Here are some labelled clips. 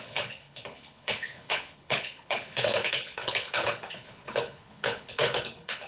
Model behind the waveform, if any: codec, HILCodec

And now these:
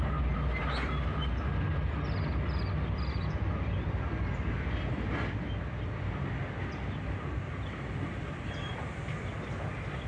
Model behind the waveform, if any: none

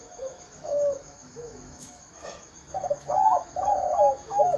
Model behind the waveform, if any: autoencoder, DAC-VAE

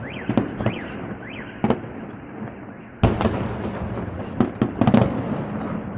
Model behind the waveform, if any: none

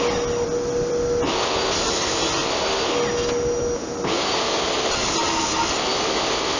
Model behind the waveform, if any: none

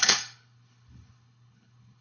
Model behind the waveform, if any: codec, HILCodec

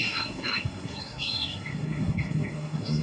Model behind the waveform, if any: codec, SNAC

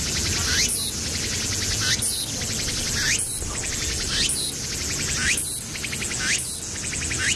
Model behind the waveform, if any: none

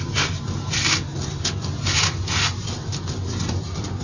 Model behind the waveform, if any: none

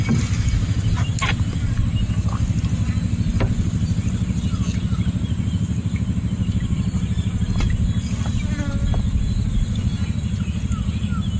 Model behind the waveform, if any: none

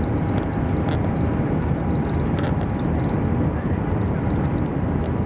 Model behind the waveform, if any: none